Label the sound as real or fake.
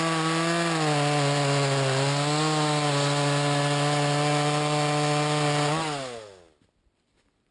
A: real